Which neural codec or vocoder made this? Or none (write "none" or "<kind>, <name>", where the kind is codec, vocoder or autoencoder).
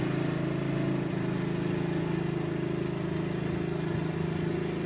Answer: none